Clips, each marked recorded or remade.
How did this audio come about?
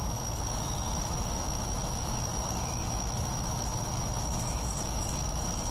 remade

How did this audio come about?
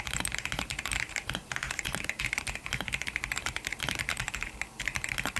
remade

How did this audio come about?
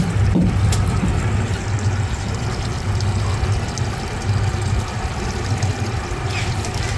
recorded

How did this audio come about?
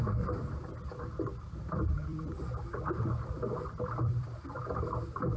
remade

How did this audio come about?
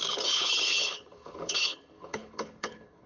remade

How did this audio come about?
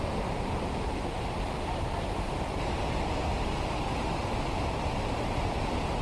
recorded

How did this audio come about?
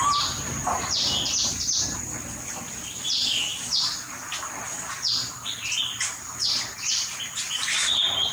recorded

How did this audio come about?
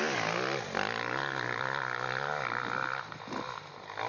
recorded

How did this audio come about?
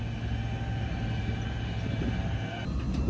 recorded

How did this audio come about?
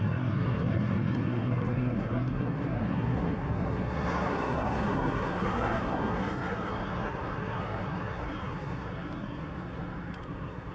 remade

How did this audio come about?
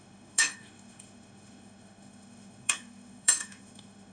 remade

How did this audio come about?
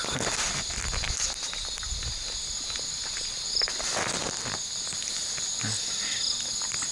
recorded